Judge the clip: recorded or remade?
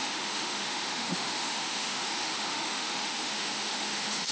remade